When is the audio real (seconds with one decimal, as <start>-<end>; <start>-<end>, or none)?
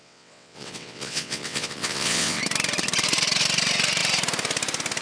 2.4-5.0